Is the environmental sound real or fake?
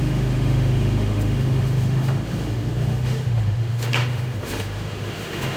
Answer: fake